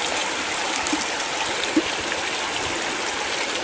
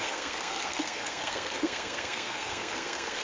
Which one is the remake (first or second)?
second